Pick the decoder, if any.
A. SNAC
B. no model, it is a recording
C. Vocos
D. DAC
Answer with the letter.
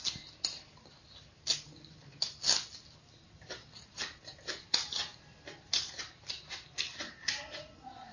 B